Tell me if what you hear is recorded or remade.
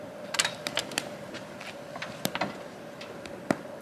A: recorded